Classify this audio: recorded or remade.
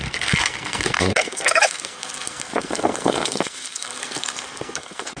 remade